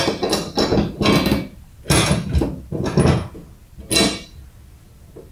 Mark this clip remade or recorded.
recorded